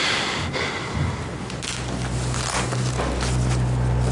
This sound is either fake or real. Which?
real